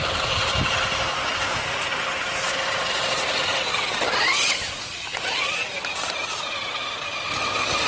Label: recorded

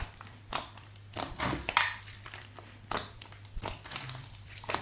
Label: remade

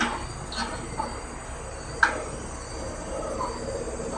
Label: recorded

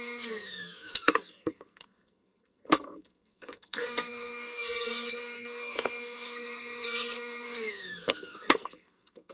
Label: remade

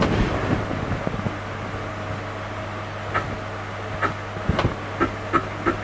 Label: recorded